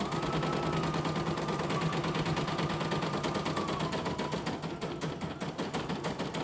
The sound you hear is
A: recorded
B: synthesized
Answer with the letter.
A